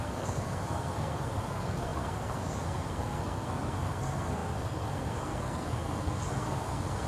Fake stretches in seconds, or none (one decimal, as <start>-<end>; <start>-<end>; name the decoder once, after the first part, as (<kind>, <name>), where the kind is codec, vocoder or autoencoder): 0.0-7.1 (codec, SNAC)